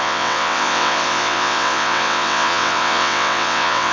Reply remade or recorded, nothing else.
remade